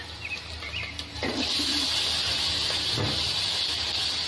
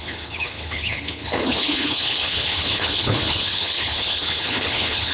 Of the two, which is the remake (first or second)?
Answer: second